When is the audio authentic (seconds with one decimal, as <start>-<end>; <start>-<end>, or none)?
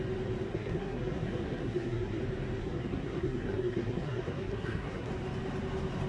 0.0-0.5; 2.2-2.6; 5.1-6.1